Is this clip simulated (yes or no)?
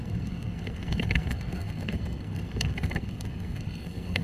yes